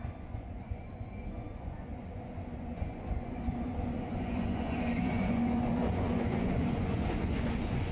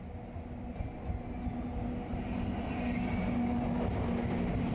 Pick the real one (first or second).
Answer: second